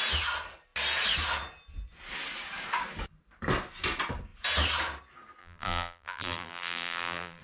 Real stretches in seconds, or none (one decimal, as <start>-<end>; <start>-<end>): 0.0-5.4